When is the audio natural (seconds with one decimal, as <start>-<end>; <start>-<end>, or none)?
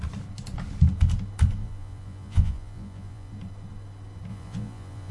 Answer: 0.0-1.6; 3.3-4.3